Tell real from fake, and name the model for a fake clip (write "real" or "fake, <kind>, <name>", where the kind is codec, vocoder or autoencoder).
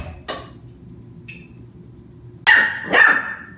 real